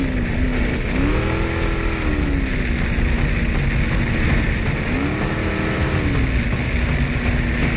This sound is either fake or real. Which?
real